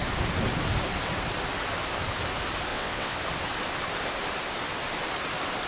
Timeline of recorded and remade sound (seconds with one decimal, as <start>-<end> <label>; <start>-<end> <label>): 0.0-2.7 recorded; 2.7-3.2 remade; 3.2-5.7 recorded